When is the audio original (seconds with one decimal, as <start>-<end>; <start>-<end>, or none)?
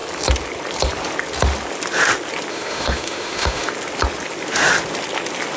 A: 0.0-2.5; 3.7-5.6